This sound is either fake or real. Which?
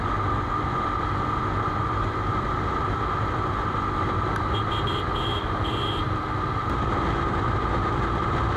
real